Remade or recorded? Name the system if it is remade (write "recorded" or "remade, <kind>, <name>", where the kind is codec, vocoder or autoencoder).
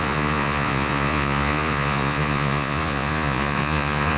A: remade, vocoder, Vocos